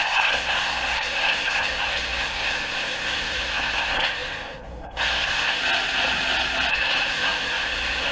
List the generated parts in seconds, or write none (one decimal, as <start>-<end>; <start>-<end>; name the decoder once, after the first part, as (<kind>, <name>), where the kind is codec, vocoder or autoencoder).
0.0-5.6 (codec, SNAC); 6.7-8.1